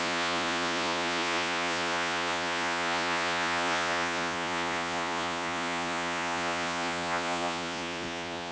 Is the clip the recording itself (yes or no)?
no